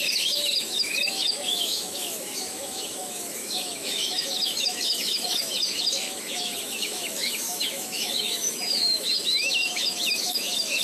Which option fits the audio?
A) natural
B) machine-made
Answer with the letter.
B